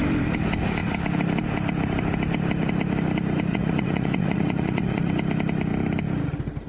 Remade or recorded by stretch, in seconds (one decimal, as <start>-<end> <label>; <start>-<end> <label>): 0.0-3.5 recorded; 3.5-5.1 remade; 5.1-6.7 recorded